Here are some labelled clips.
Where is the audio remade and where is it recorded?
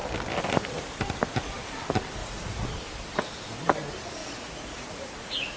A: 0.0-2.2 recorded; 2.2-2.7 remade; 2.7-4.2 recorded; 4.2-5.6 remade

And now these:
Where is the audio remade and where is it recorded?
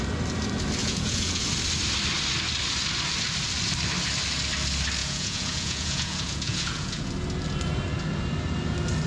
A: 0.0-0.8 recorded; 0.8-1.4 remade; 1.4-5.0 recorded; 5.0-7.1 remade; 7.1-9.1 recorded